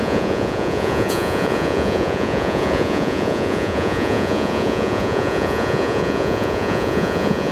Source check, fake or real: fake